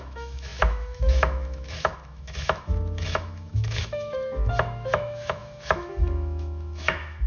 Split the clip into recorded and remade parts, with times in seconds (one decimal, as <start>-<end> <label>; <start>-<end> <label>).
0.0-7.3 remade